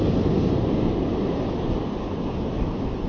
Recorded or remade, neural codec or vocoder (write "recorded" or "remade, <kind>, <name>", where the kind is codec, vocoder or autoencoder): recorded